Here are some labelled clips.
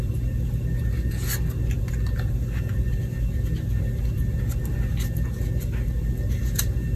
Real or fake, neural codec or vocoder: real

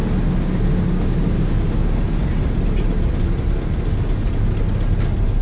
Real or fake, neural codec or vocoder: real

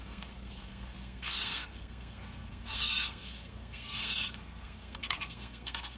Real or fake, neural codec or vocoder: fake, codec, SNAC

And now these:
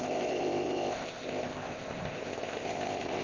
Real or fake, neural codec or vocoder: fake, codec, ZipCodec